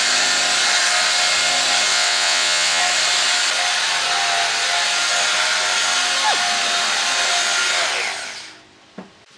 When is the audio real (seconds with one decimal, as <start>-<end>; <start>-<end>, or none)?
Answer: 0.0-1.9; 2.8-9.4